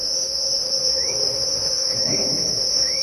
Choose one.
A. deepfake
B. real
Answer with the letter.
A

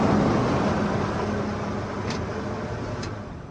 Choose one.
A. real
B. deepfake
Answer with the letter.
A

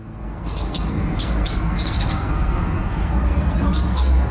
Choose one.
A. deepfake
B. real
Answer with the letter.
A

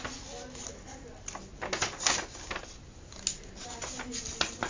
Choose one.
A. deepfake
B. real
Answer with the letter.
B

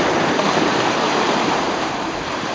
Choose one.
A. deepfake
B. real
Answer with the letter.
A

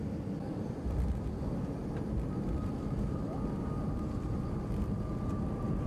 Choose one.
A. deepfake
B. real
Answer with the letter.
B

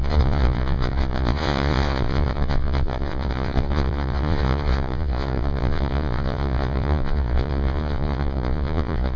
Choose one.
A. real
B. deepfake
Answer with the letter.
B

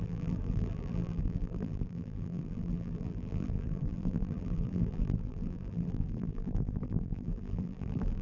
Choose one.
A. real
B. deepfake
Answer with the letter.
B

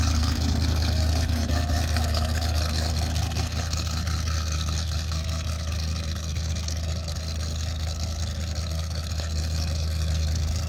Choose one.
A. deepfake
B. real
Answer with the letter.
A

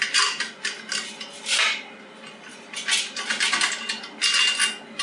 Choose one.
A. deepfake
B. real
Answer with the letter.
B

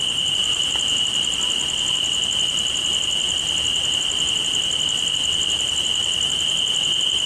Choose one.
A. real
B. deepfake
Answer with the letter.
A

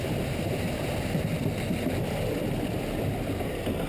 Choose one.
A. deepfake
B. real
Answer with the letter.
B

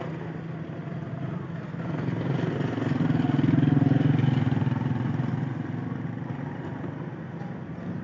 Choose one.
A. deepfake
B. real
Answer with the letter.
B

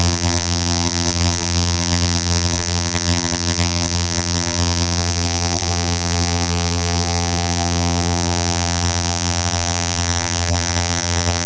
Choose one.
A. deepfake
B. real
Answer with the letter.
A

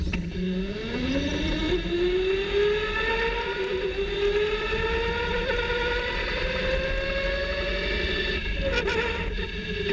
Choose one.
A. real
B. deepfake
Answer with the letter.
A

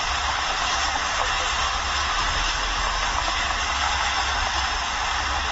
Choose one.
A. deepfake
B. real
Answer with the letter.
B